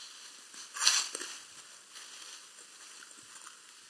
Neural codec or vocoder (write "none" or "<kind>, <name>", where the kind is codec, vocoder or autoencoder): none